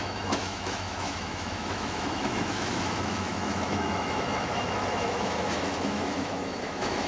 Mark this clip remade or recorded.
remade